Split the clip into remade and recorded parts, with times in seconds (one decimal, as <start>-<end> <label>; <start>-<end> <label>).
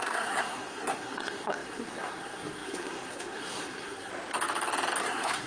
0.0-4.1 remade; 4.1-5.0 recorded; 5.0-5.5 remade